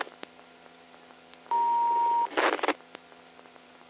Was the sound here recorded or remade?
recorded